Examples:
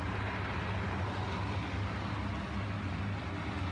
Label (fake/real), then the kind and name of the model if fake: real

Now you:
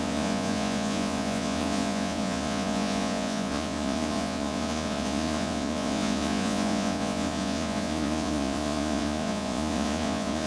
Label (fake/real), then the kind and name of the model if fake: fake, vocoder, Vocos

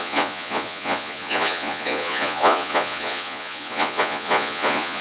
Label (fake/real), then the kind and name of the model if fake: fake, vocoder, Vocos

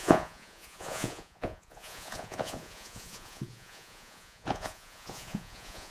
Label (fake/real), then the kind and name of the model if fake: fake, vocoder, Vocos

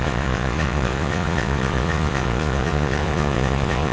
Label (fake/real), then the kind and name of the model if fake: fake, vocoder, Vocos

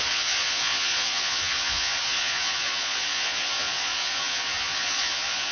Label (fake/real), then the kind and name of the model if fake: fake, vocoder, Vocos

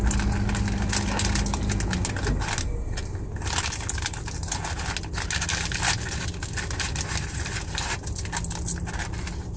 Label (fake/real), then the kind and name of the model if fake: real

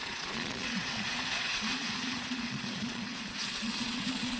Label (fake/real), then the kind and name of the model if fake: fake, vocoder, Vocos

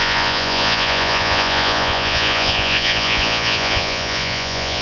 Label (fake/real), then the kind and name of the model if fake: fake, vocoder, Vocos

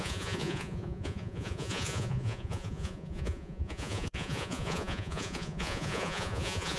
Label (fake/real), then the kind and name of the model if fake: fake, vocoder, Vocos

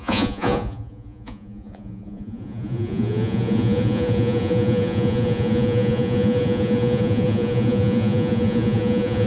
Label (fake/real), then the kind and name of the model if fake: fake, vocoder, Vocos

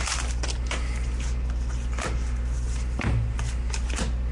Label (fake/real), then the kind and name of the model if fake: real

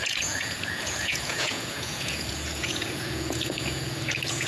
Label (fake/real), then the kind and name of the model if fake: fake, vocoder, Vocos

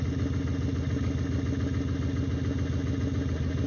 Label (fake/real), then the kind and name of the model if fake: real